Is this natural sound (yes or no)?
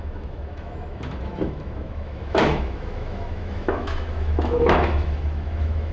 no